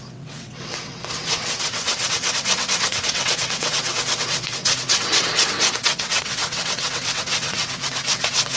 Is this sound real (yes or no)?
no